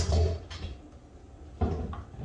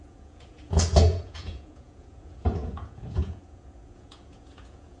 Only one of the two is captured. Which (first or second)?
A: first